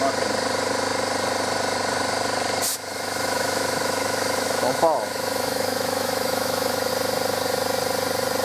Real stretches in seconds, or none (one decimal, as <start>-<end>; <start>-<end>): 0.0-2.7; 6.9-8.4